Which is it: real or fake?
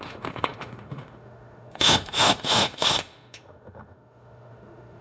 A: fake